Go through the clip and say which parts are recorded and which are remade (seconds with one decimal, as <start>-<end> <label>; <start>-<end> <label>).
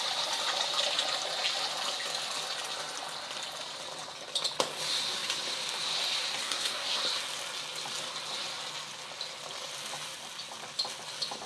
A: 0.0-6.4 recorded; 6.4-7.0 remade; 7.0-11.5 recorded